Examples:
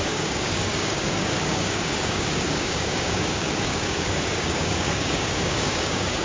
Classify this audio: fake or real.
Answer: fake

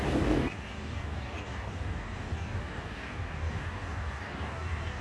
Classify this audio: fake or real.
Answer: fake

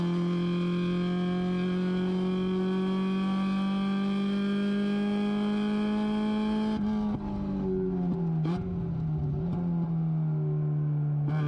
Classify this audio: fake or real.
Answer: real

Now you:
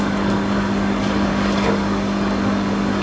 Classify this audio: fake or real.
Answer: fake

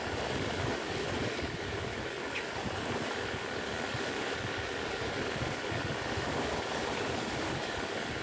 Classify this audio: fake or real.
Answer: fake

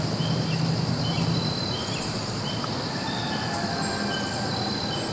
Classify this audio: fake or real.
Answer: real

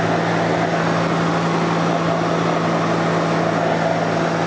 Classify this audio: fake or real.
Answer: real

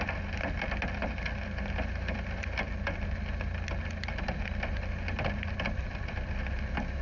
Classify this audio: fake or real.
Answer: real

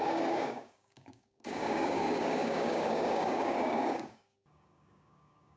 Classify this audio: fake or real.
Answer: fake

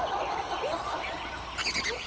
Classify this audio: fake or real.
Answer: real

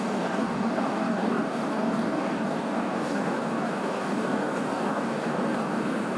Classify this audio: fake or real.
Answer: fake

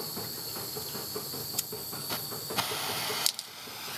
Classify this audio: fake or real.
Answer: real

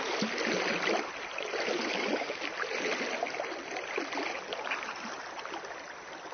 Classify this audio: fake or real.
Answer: real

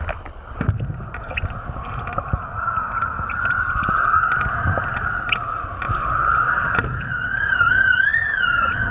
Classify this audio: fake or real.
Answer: real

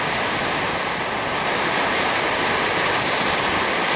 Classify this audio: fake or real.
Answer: real